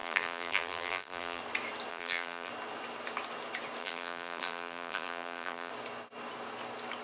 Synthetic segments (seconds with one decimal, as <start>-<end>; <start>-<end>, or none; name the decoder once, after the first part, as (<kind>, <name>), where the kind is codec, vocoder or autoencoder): 0.0-1.4 (vocoder, BigVGAN v2); 1.9-2.5; 3.8-5.7